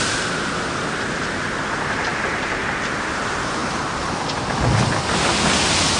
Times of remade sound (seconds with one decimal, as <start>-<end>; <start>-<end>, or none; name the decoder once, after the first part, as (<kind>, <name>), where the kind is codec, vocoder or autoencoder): none